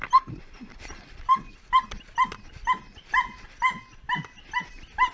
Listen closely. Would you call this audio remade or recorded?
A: recorded